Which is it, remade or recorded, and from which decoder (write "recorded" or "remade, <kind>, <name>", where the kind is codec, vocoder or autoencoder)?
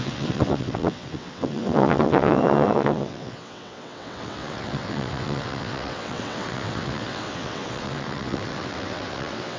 remade, vocoder, WaveNeXt